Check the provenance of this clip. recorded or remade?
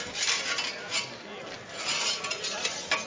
recorded